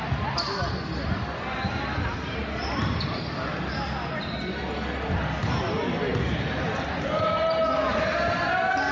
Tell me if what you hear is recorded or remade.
recorded